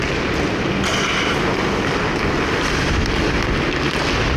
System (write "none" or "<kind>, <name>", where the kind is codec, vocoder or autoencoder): none